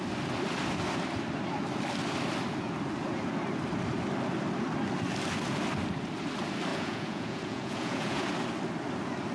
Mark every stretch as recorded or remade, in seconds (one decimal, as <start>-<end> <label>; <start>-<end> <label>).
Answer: 0.0-6.7 recorded; 6.7-8.3 remade; 8.3-9.3 recorded